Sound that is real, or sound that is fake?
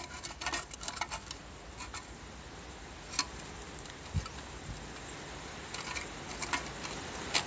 real